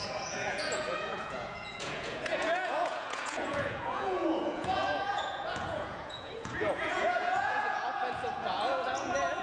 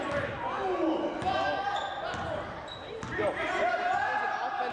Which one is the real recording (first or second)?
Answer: second